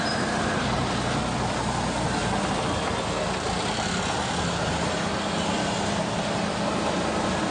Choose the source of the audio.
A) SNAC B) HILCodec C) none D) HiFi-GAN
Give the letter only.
C